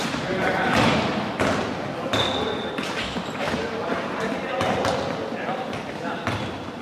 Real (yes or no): yes